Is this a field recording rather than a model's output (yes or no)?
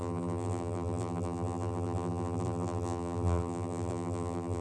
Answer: no